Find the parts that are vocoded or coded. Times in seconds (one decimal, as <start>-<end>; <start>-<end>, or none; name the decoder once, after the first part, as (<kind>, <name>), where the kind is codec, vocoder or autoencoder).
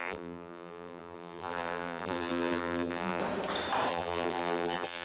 0.0-3.2 (vocoder, BigVGAN v2); 3.9-5.0